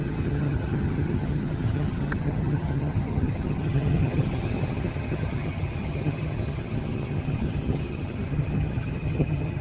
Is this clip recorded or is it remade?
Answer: remade